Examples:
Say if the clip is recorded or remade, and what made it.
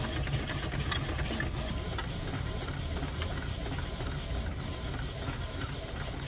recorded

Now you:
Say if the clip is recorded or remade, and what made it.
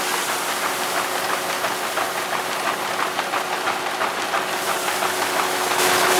recorded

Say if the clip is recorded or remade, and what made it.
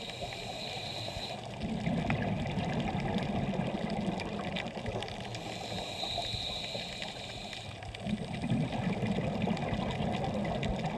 recorded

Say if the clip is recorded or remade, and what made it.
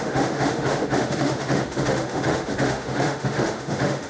remade, autoencoder, DAC-VAE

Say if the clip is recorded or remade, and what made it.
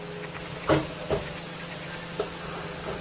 recorded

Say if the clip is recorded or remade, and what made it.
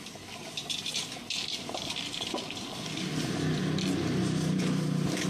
recorded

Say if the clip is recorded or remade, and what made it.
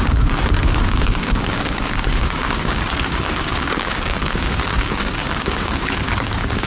remade, codec, DAC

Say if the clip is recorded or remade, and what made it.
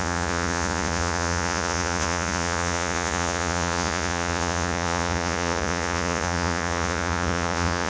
remade, vocoder, Vocos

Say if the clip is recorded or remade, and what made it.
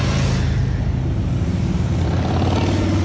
recorded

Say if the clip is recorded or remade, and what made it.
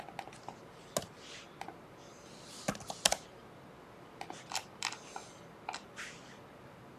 recorded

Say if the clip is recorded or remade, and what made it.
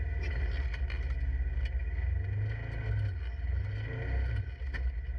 recorded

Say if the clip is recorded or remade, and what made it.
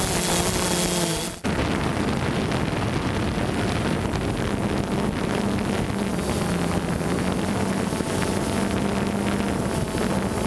recorded